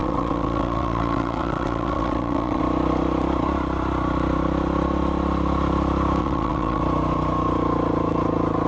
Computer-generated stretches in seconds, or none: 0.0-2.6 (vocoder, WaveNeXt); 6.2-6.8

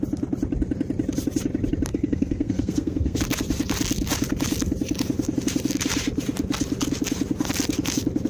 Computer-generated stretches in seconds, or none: 1.9-3.2 (codec, SNAC)

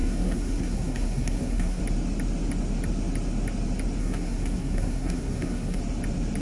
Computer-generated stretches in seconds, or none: 0.0-1.8 (codec, SNAC); 4.0-5.8

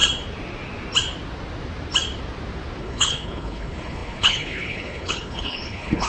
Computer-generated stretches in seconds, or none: 2.8-6.1 (codec, HILCodec)